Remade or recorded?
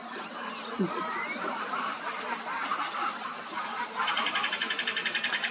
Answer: remade